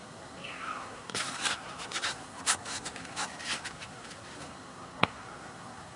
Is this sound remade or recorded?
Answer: remade